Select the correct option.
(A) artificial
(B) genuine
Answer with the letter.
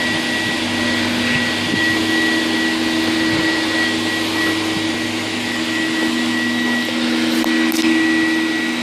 B